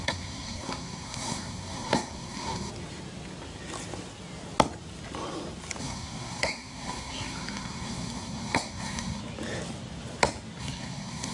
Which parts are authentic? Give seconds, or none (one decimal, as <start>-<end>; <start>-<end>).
2.7-5.8; 9.2-10.6